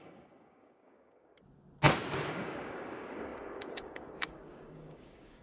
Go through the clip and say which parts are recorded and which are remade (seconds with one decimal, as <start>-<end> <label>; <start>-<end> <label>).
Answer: 0.0-1.3 remade; 1.3-2.3 recorded; 2.3-5.4 remade